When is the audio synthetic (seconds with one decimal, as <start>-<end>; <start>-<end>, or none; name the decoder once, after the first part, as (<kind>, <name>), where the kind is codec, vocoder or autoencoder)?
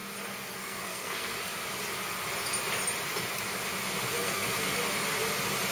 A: 0.5-1.5 (codec, SNAC); 4.1-4.8